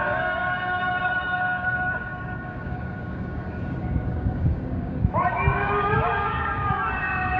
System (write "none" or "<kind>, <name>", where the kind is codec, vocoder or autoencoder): codec, DAC